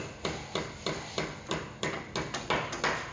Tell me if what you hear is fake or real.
real